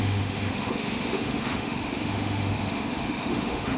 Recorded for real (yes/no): no